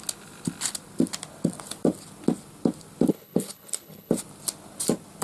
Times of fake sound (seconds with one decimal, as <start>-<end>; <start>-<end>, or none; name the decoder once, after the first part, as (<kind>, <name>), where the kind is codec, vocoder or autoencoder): 3.1-4.1 (codec, HILCodec)